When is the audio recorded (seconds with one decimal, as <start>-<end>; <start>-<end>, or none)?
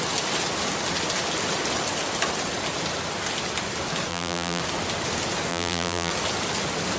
0.0-4.1; 4.6-5.5; 6.1-7.0